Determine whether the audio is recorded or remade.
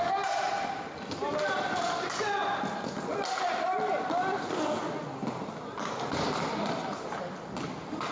recorded